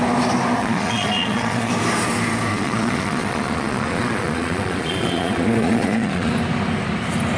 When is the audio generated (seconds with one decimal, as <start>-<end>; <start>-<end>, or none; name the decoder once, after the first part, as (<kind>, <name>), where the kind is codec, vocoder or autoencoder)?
0.6-1.7 (vocoder, Vocos); 2.5-6.3